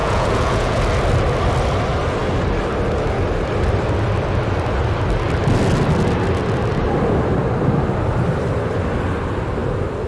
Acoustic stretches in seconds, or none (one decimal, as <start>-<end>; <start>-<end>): 0.8-10.1